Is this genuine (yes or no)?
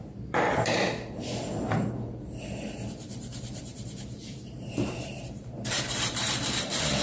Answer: no